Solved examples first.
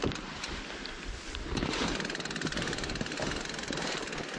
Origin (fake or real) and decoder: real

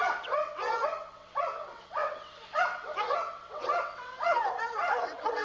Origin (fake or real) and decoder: fake, vocoder, WaveNeXt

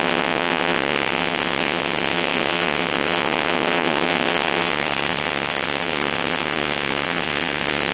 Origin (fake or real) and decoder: fake, vocoder, WaveNeXt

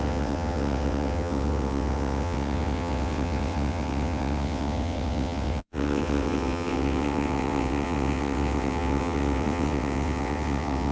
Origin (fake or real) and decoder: fake, vocoder, WaveNeXt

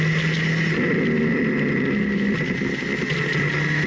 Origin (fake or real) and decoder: real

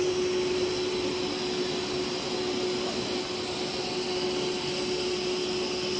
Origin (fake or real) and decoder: real